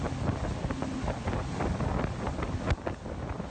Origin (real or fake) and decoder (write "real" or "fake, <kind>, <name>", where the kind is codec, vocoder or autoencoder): real